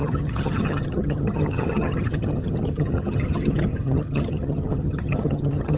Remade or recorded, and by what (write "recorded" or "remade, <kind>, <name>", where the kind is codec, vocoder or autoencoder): remade, vocoder, HiFi-GAN